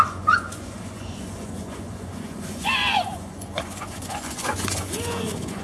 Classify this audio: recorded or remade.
remade